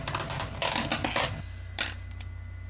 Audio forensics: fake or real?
real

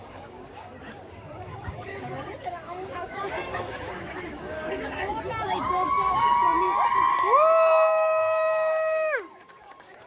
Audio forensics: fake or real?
fake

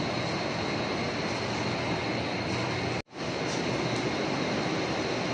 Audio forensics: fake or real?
real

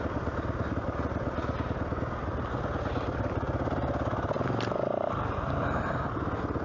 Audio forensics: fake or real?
real